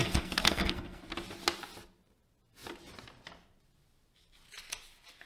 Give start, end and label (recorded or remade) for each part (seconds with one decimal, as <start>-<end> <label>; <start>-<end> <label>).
0.0-1.0 remade; 1.0-5.3 recorded